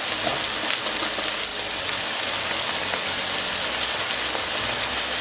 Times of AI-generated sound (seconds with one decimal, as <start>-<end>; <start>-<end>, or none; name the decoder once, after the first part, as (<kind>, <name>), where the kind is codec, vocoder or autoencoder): none